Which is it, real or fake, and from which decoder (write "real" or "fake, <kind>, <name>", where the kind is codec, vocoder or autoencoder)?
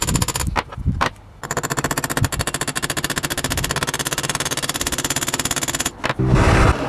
real